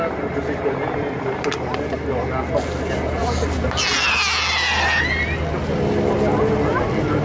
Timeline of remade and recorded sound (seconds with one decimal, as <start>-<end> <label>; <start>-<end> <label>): 0.0-7.2 recorded